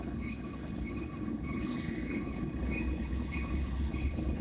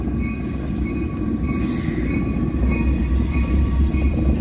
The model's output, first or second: first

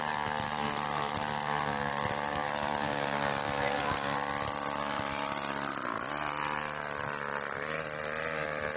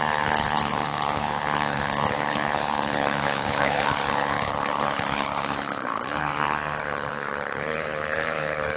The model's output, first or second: second